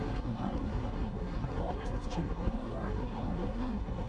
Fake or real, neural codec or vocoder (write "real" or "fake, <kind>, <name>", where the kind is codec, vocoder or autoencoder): fake, codec, SNAC